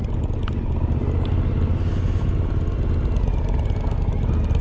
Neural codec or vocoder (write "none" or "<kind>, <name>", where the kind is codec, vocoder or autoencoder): none